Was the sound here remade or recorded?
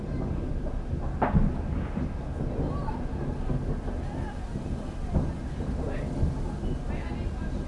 recorded